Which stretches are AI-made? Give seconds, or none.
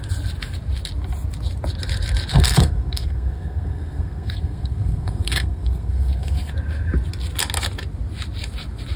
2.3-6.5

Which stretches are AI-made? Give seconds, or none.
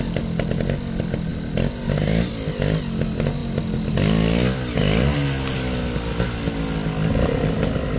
none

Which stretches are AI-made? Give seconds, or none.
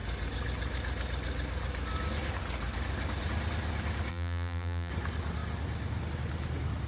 4.1-4.9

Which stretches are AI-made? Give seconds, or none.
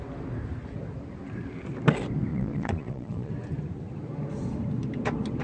2.3-3.3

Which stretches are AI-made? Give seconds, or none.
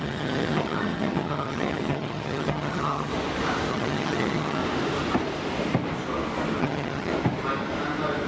0.0-3.1; 3.7-4.6; 6.6-7.1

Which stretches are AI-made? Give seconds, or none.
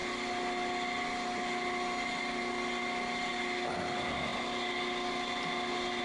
none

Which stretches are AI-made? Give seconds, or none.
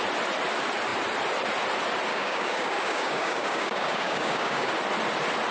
2.1-4.7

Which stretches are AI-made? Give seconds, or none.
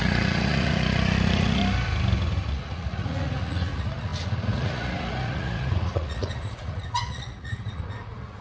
0.0-1.6; 2.5-8.4